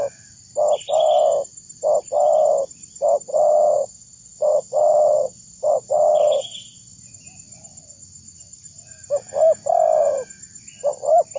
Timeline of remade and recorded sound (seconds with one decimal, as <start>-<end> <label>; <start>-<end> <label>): 0.0-3.3 recorded; 3.3-7.1 remade; 7.1-11.4 recorded

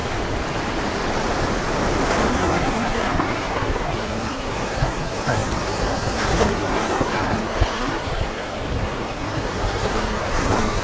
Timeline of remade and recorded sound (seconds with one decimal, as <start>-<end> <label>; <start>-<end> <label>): 0.0-2.3 recorded; 2.3-10.8 remade

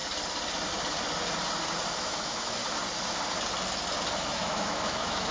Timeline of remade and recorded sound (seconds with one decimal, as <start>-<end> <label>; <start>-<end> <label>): 0.0-2.0 recorded; 2.0-2.6 remade; 2.6-4.2 recorded; 4.2-5.3 remade